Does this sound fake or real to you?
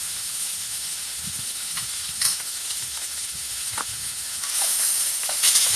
fake